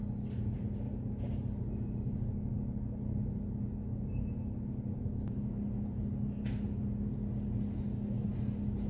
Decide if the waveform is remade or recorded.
recorded